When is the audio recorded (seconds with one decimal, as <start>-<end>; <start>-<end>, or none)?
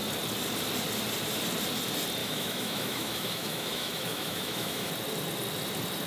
0.0-2.2; 4.9-6.1